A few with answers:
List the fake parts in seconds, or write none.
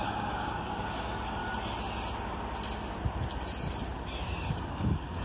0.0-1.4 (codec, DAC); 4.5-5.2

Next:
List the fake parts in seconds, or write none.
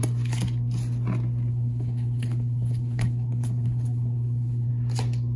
1.5-4.7 (codec, HILCodec)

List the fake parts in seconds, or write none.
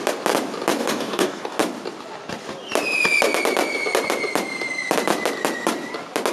0.8-1.6 (codec, DAC)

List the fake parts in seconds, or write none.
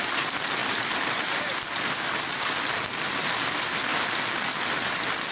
none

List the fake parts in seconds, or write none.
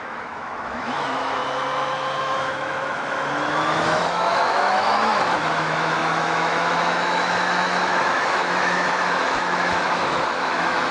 0.0-1.4 (autoencoder, DAC-VAE); 2.2-10.9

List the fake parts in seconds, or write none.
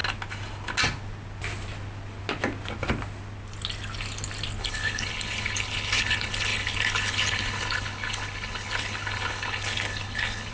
4.6-10.5 (codec, HILCodec)